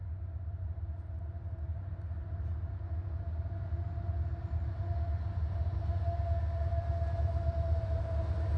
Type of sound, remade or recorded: recorded